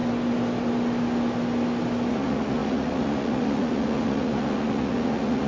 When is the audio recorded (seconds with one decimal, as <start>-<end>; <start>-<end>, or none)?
0.0-2.1